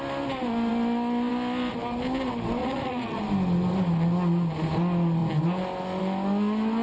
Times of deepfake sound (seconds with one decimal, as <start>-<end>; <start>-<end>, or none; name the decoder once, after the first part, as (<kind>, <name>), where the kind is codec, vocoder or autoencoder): 2.6-3.2 (vocoder, Vocos)

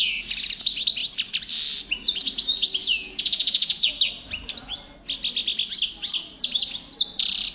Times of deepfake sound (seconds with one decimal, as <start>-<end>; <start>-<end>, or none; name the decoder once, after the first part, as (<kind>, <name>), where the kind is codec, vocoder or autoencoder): 2.8-3.9 (vocoder, Vocos)

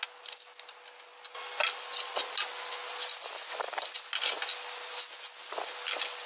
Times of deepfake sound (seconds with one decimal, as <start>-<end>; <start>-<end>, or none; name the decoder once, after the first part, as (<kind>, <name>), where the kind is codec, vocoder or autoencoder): none

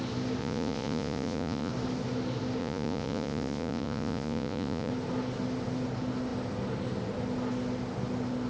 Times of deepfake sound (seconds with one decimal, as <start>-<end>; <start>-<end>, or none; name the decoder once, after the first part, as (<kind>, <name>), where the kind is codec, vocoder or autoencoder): 0.4-1.7 (vocoder, Vocos); 2.6-4.9

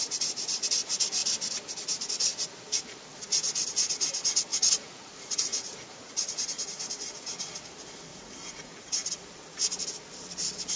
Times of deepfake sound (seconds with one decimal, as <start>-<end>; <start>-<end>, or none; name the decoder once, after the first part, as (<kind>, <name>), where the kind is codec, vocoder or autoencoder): 4.5-6.8 (vocoder, Vocos); 8.1-9.3

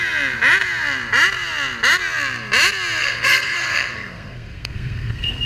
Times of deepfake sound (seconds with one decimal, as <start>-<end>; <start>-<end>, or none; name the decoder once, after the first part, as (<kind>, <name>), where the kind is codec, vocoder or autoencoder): 3.0-5.5 (codec, SNAC)

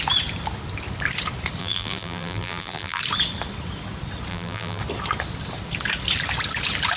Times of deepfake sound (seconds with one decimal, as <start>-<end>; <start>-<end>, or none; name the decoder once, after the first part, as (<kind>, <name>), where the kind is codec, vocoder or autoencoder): 1.6-3.0 (vocoder, BigVGAN v2); 4.3-4.8